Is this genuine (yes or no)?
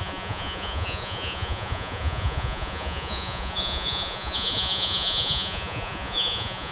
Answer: no